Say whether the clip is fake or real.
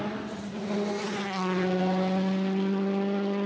real